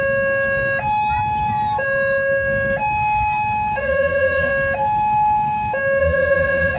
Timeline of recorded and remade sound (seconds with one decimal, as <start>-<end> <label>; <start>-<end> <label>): 0.0-3.8 recorded; 3.8-4.5 remade; 4.5-6.0 recorded; 6.0-6.8 remade